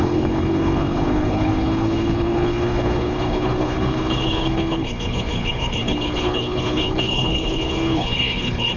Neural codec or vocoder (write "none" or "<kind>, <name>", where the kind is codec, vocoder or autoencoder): codec, HILCodec